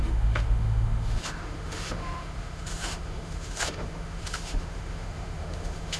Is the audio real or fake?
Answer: fake